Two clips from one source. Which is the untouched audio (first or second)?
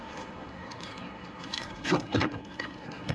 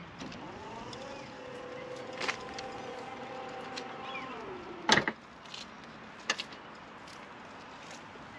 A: second